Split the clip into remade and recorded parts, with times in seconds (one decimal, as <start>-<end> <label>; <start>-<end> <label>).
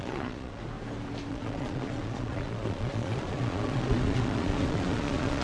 0.0-0.6 remade; 0.6-1.3 recorded; 1.3-5.4 remade